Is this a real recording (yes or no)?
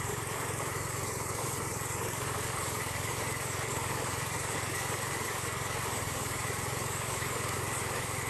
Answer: no